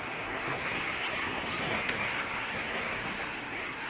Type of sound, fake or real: fake